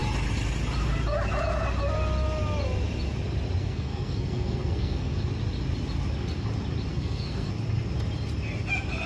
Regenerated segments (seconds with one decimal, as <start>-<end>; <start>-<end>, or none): 3.6-5.2; 6.9-7.5